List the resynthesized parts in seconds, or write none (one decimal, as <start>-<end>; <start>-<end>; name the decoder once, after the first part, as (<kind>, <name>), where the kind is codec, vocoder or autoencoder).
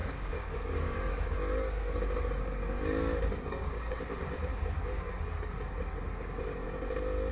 0.0-4.0 (codec, DAC); 4.5-6.4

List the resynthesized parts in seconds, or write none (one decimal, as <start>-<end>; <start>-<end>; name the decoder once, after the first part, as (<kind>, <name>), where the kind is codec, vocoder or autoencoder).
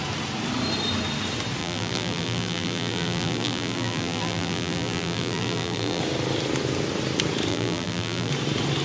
1.6-6.0 (vocoder, BigVGAN v2); 7.5-8.3